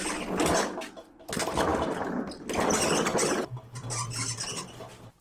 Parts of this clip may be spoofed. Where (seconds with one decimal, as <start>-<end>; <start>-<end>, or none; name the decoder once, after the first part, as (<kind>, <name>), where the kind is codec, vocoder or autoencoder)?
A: none